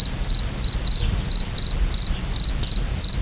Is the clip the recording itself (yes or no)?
yes